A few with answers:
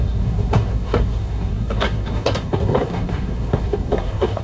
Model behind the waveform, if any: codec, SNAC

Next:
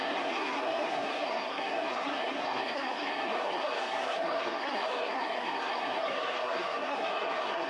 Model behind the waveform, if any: codec, SNAC